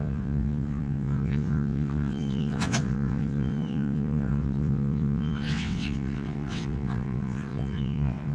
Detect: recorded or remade remade